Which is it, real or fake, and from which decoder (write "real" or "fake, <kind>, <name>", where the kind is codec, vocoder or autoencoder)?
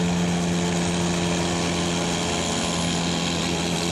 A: real